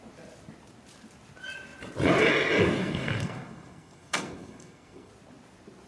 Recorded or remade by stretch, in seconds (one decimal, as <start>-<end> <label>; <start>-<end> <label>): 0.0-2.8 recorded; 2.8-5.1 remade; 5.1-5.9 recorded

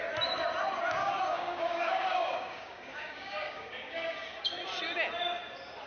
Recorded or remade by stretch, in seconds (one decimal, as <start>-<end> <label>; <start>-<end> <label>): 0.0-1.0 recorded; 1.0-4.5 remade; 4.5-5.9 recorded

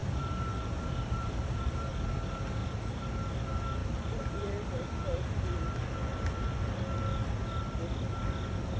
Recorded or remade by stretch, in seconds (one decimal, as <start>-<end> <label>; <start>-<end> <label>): 0.0-1.9 remade; 1.9-2.6 recorded; 2.6-3.2 remade; 3.2-3.8 recorded; 3.8-5.8 remade; 5.8-8.8 recorded

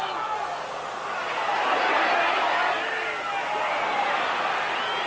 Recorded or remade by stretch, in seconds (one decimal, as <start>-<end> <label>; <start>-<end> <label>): 0.0-5.1 recorded

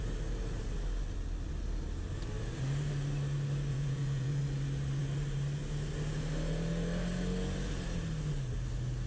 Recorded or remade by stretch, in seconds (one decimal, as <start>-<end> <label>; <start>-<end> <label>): 0.0-3.7 recorded; 3.7-4.4 remade; 4.4-9.1 recorded

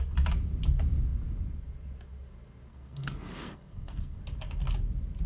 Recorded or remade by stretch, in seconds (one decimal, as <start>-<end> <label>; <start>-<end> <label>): 0.0-2.7 recorded; 2.7-4.2 remade; 4.2-5.3 recorded